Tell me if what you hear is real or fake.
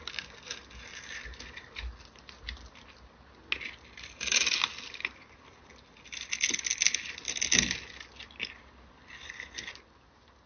real